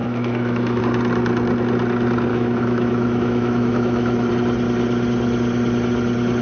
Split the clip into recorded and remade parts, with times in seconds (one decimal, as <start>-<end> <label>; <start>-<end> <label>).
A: 0.0-0.8 remade; 0.8-2.3 recorded; 2.3-4.3 remade; 4.3-6.4 recorded